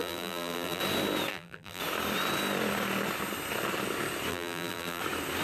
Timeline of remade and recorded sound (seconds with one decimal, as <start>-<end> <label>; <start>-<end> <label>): 0.0-0.8 remade; 0.8-1.3 recorded; 1.3-1.8 remade; 1.8-4.3 recorded; 4.3-5.0 remade; 5.0-5.4 recorded